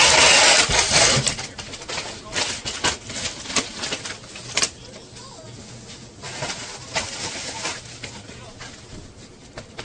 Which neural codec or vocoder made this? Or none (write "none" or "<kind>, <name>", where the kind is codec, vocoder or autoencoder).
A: none